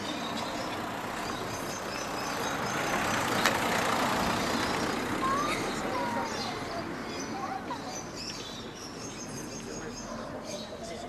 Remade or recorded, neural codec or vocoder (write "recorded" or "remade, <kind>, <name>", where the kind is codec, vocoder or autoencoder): recorded